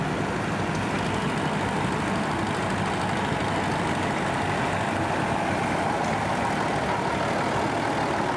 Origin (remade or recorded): recorded